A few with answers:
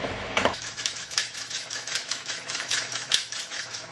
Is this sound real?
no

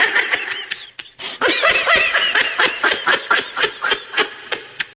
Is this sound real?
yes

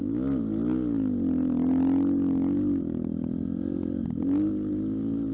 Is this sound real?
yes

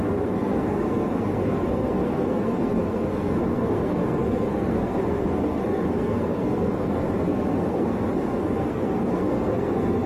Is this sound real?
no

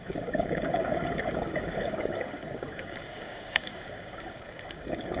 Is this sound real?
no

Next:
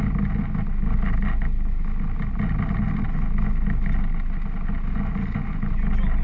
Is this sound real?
yes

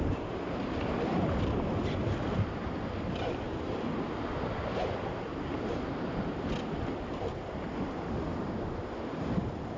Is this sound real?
yes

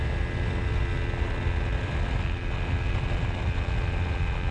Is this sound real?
yes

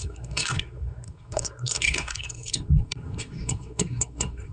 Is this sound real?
no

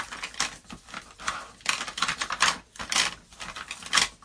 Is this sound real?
yes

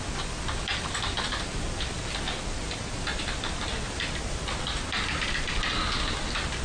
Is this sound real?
yes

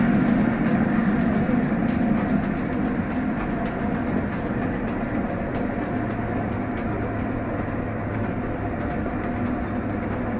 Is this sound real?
yes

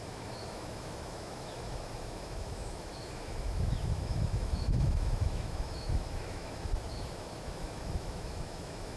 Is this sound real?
no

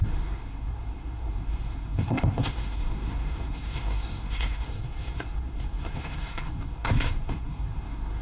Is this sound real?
no